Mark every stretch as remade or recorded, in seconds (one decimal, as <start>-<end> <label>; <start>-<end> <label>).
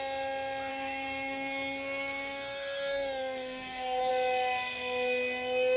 0.0-0.7 recorded; 0.7-4.1 remade; 4.1-5.8 recorded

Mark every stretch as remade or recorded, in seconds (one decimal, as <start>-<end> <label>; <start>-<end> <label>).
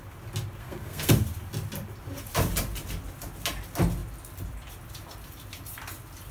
0.0-0.6 recorded; 0.6-1.1 remade; 1.1-6.3 recorded